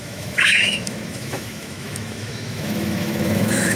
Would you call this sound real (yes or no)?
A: no